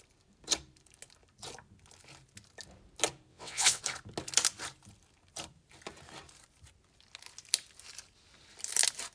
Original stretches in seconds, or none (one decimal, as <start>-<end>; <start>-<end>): 0.0-3.3; 3.8-9.1